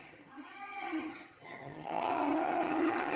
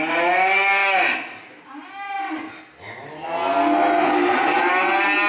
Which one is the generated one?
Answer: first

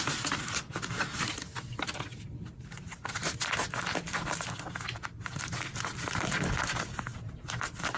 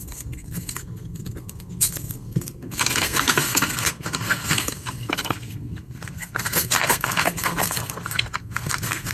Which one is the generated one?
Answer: second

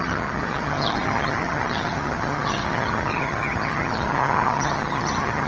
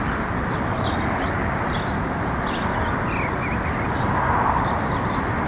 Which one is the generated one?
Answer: first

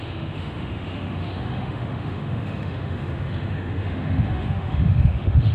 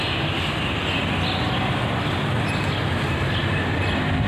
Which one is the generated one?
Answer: first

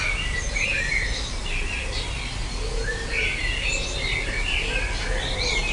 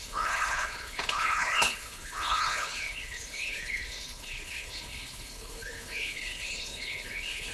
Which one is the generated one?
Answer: second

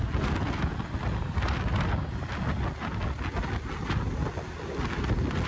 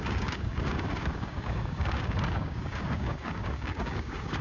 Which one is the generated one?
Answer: second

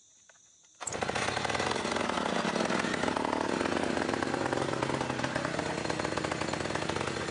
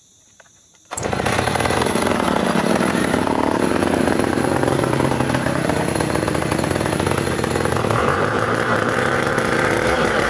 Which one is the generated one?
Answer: second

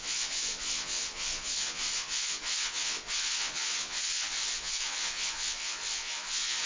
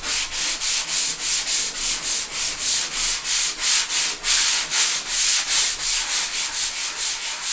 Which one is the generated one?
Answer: first